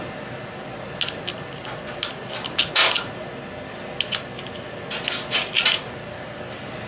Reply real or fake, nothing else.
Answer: real